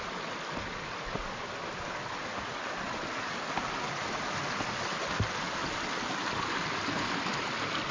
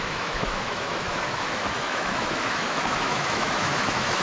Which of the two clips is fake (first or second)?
second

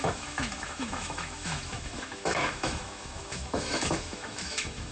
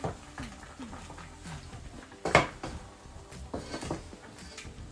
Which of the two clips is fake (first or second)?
first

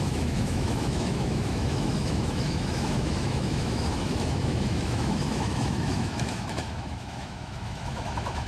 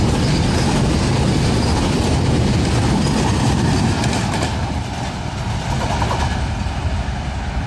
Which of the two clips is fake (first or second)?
first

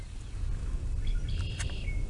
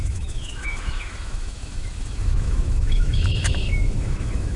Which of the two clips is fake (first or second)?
second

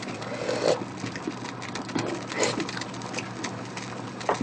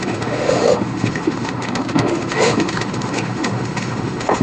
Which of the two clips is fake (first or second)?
second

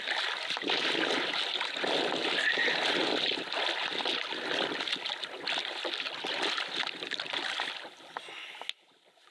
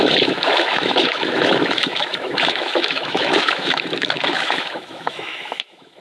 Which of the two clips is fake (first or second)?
second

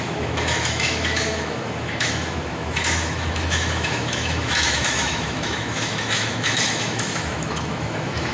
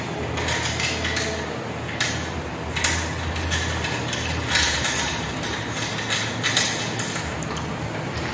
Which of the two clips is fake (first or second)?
first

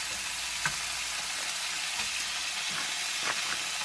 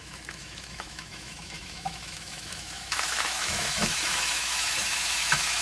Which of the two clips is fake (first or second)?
second